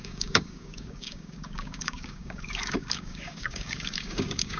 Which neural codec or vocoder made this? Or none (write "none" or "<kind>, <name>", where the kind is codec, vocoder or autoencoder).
codec, DAC